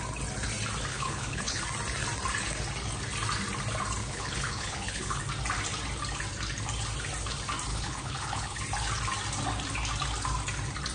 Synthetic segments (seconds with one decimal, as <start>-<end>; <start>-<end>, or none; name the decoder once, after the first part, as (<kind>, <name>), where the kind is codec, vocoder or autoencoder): 0.9-1.6 (codec, HILCodec); 4.0-5.2; 7.7-8.6